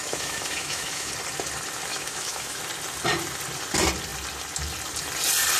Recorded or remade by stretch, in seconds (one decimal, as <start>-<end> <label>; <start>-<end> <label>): 0.0-1.1 remade; 1.1-1.9 recorded; 1.9-2.6 remade; 2.6-5.6 recorded